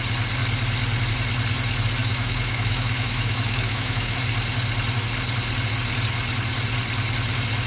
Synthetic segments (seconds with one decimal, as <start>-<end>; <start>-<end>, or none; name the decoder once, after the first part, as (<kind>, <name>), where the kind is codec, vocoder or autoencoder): 2.0-4.2 (autoencoder, DAC-VAE)